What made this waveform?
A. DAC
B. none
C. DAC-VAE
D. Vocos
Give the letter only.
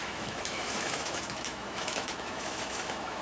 C